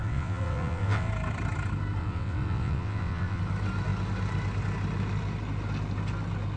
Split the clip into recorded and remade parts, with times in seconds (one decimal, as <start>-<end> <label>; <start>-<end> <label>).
0.0-1.1 remade; 1.1-2.0 recorded; 2.0-3.4 remade; 3.4-6.6 recorded